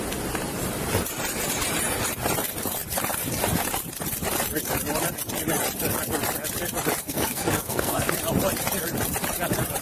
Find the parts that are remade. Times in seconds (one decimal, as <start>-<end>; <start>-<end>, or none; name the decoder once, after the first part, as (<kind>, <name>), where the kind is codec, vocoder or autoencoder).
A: 7.0-8.1 (codec, SNAC)